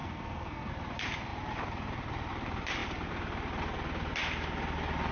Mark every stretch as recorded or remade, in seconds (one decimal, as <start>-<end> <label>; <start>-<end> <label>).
0.0-0.7 remade; 0.7-5.1 recorded